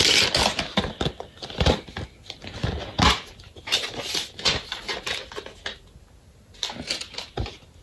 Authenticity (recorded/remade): recorded